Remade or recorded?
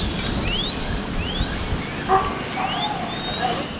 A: recorded